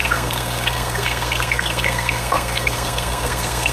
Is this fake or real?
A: fake